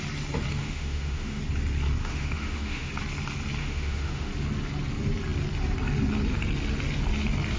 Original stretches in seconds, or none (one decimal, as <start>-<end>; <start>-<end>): 0.0-0.6; 1.4-2.0; 2.9-3.6; 4.3-7.6